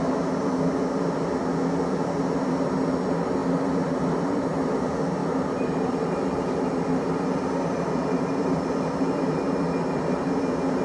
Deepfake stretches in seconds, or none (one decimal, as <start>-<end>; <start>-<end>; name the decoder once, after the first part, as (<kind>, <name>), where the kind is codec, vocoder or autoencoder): 3.4-4.8 (vocoder, BigVGAN v2); 5.2-10.3